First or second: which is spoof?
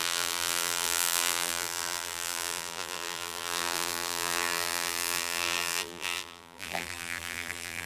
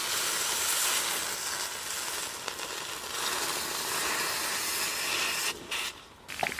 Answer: first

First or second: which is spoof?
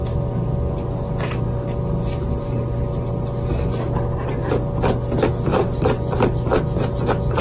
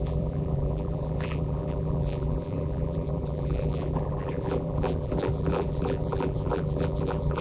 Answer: second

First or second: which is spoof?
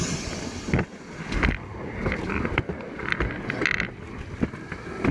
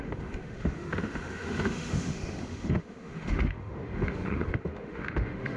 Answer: second